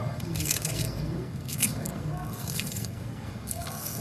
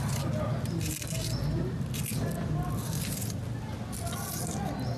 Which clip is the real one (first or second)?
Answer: second